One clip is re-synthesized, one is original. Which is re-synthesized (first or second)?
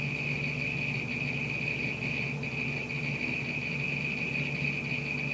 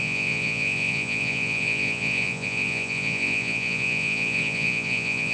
second